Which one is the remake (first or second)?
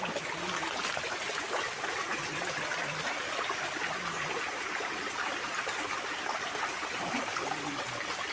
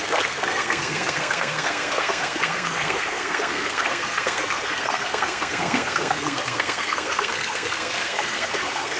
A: second